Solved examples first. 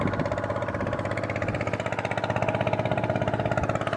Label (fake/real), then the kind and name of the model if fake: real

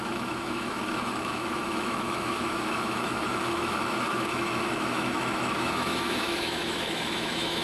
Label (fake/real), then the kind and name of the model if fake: fake, autoencoder, DAC-VAE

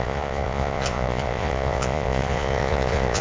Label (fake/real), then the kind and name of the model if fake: fake, vocoder, Vocos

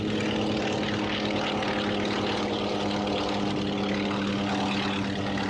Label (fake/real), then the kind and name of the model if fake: real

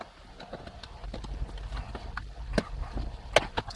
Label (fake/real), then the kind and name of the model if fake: real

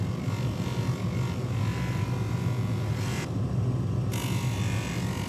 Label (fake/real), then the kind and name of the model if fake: real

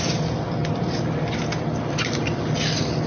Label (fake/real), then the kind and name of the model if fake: real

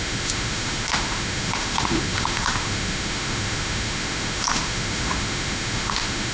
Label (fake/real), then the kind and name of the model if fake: fake, autoencoder, DAC-VAE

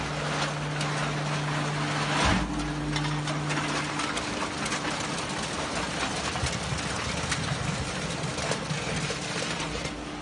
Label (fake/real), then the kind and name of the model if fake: real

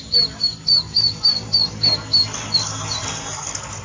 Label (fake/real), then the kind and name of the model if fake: real